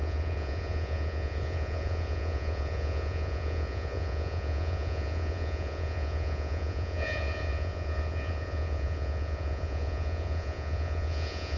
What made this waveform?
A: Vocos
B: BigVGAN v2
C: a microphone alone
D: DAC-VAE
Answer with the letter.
A